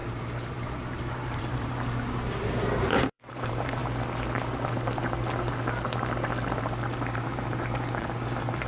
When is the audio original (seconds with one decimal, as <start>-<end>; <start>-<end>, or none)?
3.8-6.6